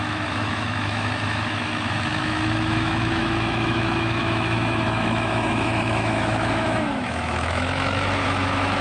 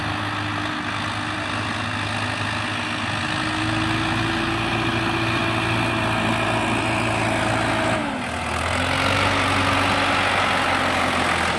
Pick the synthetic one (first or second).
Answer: first